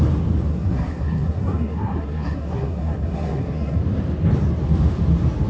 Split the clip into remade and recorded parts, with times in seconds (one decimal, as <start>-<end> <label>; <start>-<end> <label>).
0.0-0.5 recorded; 0.5-3.8 remade; 3.8-5.5 recorded